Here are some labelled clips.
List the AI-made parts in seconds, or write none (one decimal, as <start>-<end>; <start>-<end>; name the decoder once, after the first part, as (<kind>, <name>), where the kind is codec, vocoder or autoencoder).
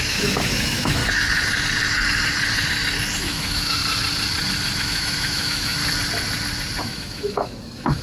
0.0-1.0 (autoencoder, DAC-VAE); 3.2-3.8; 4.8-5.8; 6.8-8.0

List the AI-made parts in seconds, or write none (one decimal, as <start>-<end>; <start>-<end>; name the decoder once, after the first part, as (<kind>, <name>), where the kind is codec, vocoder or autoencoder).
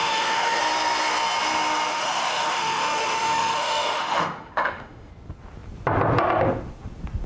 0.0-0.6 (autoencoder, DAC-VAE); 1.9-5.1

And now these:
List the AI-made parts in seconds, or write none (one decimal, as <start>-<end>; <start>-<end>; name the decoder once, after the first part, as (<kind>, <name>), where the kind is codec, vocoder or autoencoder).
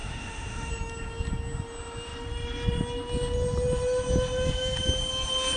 0.0-0.7 (autoencoder, DAC-VAE)